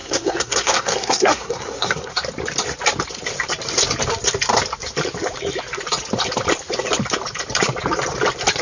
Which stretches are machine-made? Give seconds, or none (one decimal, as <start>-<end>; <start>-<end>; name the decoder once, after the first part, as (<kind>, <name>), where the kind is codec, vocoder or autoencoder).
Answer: 0.0-2.1 (codec, SNAC)